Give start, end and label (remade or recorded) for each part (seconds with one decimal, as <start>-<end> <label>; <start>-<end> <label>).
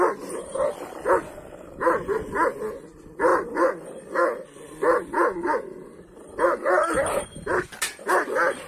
0.0-8.7 recorded